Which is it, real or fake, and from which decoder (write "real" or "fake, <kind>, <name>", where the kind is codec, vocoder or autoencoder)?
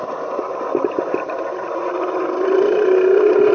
real